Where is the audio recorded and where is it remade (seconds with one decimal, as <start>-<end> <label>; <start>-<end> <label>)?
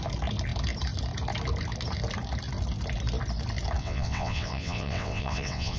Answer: 0.0-3.8 recorded; 3.8-5.8 remade